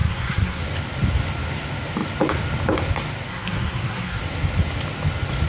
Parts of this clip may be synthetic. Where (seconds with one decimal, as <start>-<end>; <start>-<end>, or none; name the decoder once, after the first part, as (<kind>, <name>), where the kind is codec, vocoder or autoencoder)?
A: 0.0-0.6 (codec, SNAC); 3.3-4.2